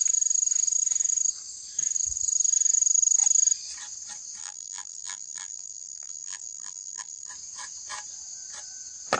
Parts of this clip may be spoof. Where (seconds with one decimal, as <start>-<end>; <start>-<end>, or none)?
4.4-7.3

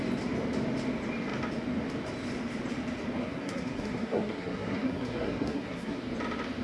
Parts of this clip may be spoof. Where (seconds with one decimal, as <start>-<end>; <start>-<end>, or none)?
3.2-6.0